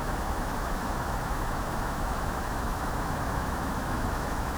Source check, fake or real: fake